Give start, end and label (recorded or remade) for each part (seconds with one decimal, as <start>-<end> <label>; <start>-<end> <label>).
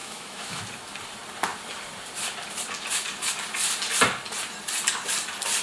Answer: 0.0-0.6 remade; 0.6-5.6 recorded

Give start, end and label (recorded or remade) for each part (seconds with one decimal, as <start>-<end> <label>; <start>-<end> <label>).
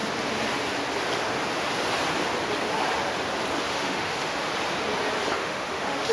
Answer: 0.0-3.7 recorded; 3.7-4.5 remade; 4.5-5.3 recorded; 5.3-6.1 remade